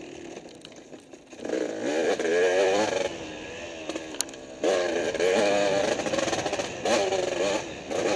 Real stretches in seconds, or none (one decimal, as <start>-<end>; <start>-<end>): 0.0-8.2